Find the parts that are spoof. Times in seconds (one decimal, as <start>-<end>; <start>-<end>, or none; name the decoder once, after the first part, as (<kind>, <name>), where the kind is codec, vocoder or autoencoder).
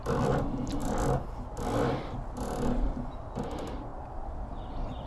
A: 3.9-4.5 (vocoder, BigVGAN v2)